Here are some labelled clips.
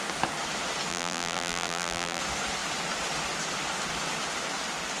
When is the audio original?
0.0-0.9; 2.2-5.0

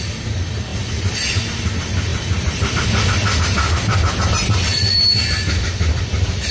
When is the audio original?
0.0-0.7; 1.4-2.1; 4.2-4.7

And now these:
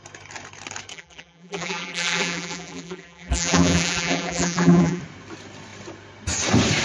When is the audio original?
0.0-0.9; 5.0-6.8

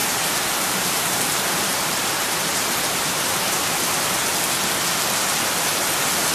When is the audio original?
3.8-6.3

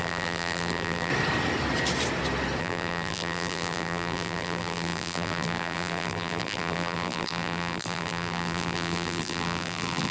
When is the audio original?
1.1-2.6

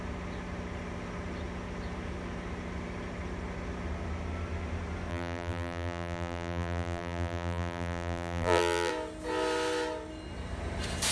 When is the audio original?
0.0-5.1; 8.9-11.1